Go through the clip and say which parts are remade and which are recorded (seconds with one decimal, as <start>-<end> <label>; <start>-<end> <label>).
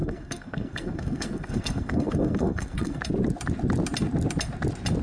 0.0-3.0 remade; 3.0-5.0 recorded